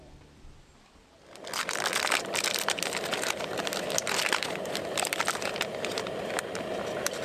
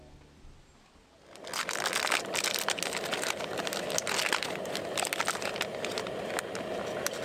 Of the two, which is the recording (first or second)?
second